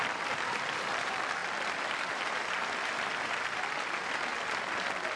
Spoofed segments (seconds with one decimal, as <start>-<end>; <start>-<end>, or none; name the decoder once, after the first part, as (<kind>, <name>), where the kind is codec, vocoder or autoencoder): 0.0-4.3 (vocoder, BigVGAN v2)